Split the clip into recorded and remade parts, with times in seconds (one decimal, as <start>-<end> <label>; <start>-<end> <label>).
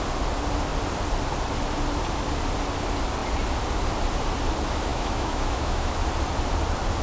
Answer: 0.0-4.9 recorded; 4.9-6.0 remade; 6.0-7.0 recorded